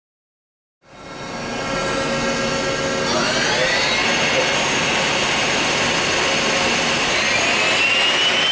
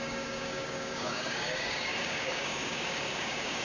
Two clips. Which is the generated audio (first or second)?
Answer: second